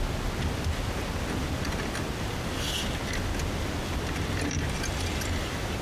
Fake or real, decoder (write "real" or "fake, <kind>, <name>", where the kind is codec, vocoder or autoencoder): real